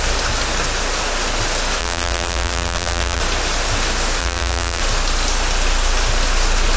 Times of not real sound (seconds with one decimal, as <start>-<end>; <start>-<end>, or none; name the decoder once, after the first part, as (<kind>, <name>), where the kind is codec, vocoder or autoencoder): 1.8-3.2 (vocoder, BigVGAN v2); 4.2-4.8